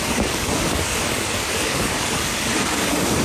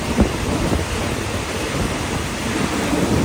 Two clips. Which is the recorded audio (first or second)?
second